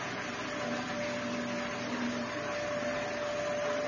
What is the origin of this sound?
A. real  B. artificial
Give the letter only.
A